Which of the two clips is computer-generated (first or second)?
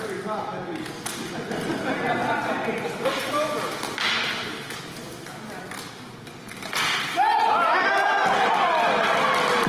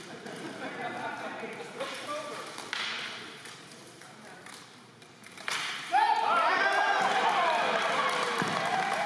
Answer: second